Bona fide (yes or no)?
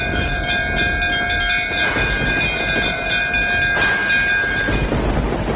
yes